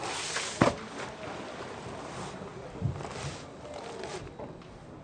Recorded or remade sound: recorded